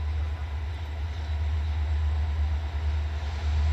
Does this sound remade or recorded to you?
recorded